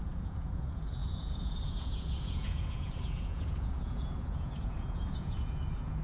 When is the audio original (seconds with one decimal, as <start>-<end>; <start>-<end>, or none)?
none